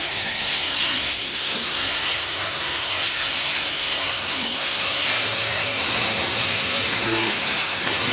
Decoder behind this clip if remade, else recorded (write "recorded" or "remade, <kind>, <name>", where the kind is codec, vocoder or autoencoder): remade, codec, SNAC